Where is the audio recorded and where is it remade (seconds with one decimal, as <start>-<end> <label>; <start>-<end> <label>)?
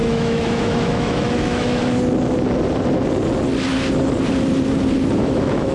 0.0-1.8 remade; 1.8-5.2 recorded; 5.2-5.7 remade